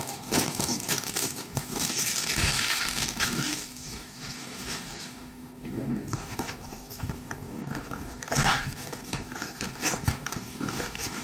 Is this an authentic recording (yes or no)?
no